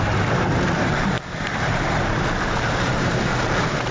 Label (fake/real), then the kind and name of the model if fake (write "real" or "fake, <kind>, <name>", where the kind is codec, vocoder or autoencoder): fake, vocoder, BigVGAN v2